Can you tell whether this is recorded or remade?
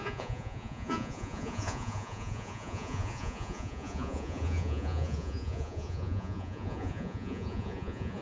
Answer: remade